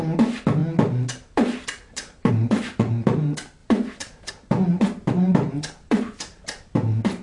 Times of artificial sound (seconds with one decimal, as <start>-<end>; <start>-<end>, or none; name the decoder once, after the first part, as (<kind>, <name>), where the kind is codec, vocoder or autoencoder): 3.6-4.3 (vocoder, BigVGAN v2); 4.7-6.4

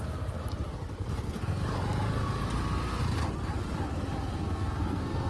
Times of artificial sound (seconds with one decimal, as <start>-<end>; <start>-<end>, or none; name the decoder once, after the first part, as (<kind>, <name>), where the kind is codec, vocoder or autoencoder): 0.0-0.4 (codec, SNAC); 1.1-1.6; 4.4-5.3

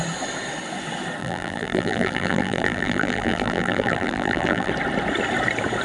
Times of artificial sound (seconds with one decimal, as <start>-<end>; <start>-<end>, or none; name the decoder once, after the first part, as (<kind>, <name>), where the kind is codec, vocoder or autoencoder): 1.2-4.7 (vocoder, BigVGAN v2)

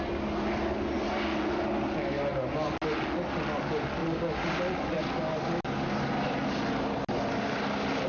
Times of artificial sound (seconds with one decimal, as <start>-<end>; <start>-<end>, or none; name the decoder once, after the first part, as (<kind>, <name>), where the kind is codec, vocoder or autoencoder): 4.0-5.0 (vocoder, BigVGAN v2)

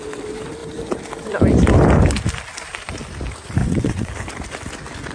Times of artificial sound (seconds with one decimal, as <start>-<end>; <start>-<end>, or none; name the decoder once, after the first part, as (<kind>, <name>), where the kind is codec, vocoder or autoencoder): 3.6-4.1 (vocoder, WaveNeXt)

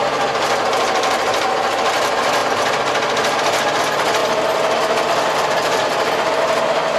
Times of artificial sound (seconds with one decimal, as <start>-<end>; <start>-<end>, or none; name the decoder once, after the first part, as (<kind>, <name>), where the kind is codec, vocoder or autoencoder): 2.4-3.8 (vocoder, BigVGAN v2); 4.2-6.4